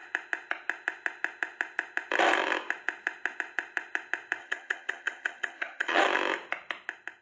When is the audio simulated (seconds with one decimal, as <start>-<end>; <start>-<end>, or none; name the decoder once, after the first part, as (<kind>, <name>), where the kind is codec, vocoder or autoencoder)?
4.4-6.0 (vocoder, HiFi-GAN)